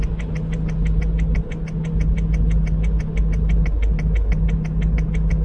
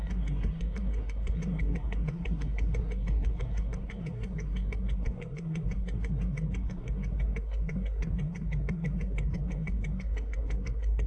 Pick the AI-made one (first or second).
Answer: second